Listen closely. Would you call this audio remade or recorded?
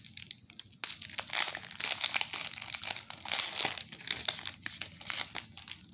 recorded